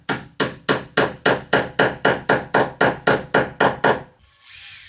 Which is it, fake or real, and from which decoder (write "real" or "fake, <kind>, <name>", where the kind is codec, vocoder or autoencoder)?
real